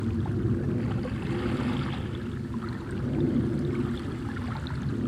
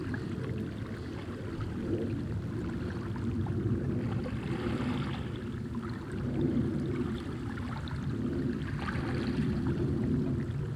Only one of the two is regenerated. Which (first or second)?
second